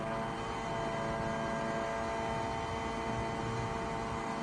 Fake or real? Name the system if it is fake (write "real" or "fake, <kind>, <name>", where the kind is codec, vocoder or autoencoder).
real